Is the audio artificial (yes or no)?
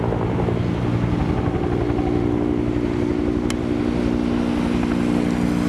no